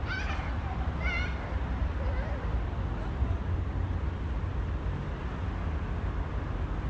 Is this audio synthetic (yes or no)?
no